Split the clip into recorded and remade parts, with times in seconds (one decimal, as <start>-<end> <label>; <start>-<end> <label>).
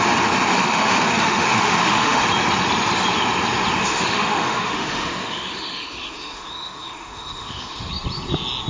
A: 0.0-0.5 recorded; 0.5-2.2 remade; 2.2-3.8 recorded; 3.8-7.9 remade; 7.9-8.7 recorded